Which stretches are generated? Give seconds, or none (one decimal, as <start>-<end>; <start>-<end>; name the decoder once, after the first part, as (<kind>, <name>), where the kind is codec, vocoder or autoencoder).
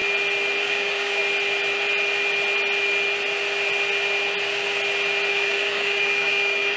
0.6-1.2 (codec, DAC); 5.3-6.8